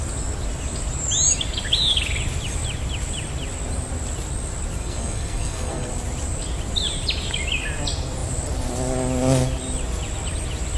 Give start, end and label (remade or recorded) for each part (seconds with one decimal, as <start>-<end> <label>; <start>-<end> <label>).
0.0-4.8 recorded; 4.8-5.9 remade; 5.9-10.8 recorded